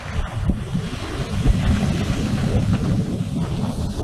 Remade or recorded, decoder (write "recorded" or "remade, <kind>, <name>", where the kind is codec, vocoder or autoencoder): recorded